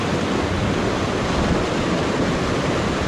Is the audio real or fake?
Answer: real